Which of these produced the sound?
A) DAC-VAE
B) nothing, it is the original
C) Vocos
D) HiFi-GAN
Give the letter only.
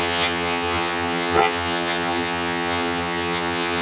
D